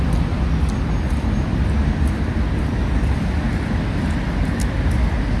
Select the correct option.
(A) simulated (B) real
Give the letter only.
B